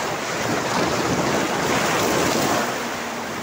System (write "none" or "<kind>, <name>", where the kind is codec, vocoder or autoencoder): none